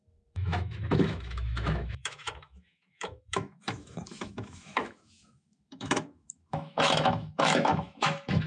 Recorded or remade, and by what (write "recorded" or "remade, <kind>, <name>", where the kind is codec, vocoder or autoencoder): remade, autoencoder, DAC-VAE